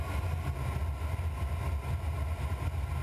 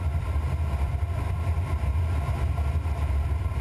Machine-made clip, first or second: second